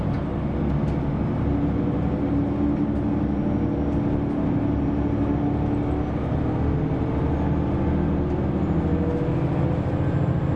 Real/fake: real